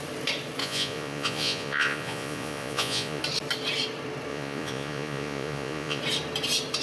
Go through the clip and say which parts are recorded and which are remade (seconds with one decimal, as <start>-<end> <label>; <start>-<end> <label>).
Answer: 0.0-0.6 recorded; 0.6-3.2 remade; 3.2-4.3 recorded; 4.3-6.0 remade; 6.0-6.8 recorded